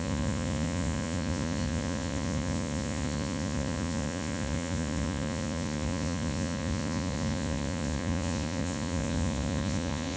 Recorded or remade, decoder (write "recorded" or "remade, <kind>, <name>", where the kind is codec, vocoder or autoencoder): remade, vocoder, Vocos